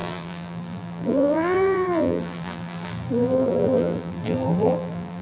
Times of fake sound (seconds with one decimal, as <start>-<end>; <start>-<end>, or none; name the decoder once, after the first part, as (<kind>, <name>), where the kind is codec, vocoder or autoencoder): 0.0-5.2 (vocoder, BigVGAN v2)